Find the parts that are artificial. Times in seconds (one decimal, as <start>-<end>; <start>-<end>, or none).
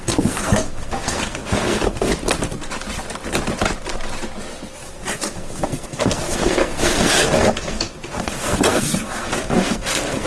0.0-2.1; 4.8-10.3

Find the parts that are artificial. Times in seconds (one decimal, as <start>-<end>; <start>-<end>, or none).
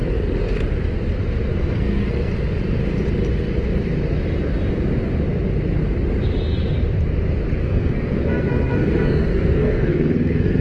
1.5-2.3; 7.6-10.6